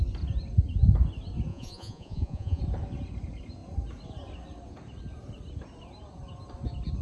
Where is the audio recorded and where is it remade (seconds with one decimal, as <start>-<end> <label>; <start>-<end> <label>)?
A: 0.0-1.5 recorded; 1.5-2.6 remade; 2.6-7.0 recorded